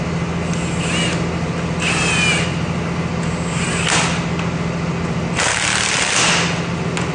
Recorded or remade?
recorded